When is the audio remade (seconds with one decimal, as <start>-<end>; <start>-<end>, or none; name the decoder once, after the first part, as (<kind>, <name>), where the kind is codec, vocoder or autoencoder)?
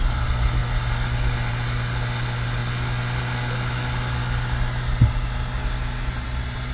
none